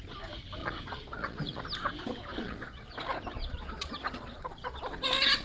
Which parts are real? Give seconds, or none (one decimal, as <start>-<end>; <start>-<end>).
0.0-0.6; 1.6-2.3; 2.9-3.3; 4.8-5.4